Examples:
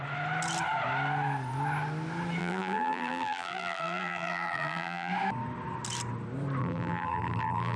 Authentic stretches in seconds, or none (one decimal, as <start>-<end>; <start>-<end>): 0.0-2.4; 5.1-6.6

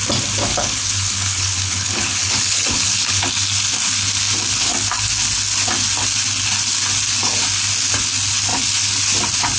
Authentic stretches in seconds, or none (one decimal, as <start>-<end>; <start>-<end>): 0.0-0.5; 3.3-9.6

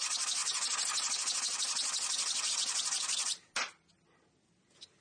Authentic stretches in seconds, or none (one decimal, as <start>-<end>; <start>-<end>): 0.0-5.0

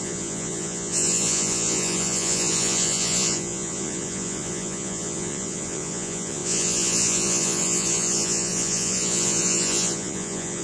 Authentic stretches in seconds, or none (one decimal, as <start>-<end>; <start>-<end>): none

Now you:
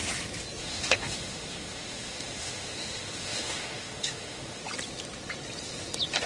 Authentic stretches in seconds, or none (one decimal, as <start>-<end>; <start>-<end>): 0.0-0.6; 4.6-6.3